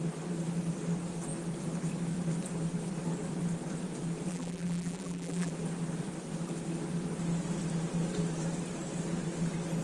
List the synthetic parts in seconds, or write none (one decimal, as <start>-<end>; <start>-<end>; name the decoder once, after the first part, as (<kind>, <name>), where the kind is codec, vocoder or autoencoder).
4.3-5.5 (vocoder, BigVGAN v2)